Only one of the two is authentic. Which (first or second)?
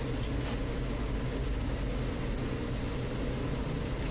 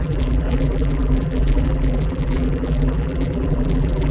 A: first